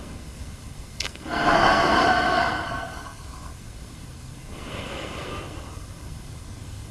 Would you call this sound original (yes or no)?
no